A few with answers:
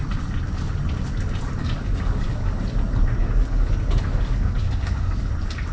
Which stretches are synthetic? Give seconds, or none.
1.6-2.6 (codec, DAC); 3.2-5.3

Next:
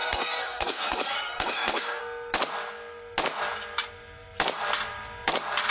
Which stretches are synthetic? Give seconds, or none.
0.0-2.0 (codec, SNAC)